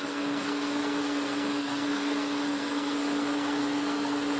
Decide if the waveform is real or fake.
fake